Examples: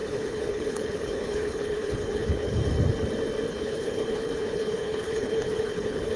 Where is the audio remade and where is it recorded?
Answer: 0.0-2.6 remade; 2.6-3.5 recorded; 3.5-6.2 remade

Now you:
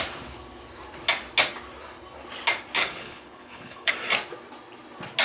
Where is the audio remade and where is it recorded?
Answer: 0.0-2.8 recorded; 2.8-3.9 remade; 3.9-5.2 recorded